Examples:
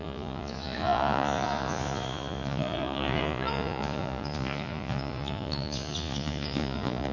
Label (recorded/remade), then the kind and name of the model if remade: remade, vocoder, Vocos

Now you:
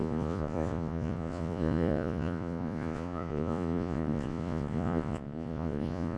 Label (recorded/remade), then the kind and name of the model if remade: remade, vocoder, Vocos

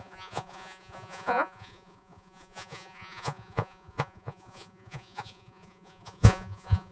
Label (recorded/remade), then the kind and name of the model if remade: remade, vocoder, Vocos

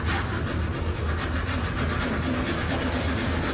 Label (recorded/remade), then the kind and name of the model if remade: recorded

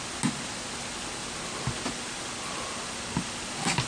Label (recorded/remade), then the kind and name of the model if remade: recorded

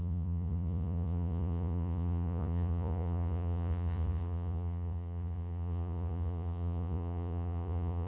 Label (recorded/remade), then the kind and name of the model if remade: remade, vocoder, Vocos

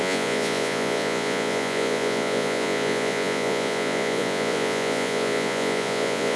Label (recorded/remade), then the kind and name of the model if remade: remade, vocoder, Vocos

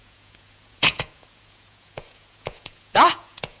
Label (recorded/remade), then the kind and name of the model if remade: remade, vocoder, Vocos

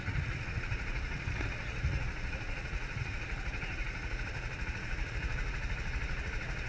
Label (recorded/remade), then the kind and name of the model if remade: remade, vocoder, Vocos